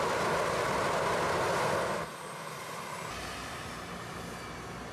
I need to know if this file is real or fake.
real